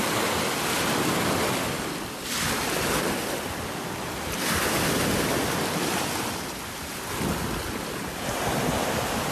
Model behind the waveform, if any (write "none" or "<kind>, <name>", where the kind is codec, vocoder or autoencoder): none